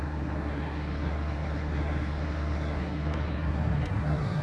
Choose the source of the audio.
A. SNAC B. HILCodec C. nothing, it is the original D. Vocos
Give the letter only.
A